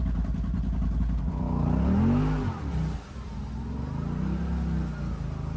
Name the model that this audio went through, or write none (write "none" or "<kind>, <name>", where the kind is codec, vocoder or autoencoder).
none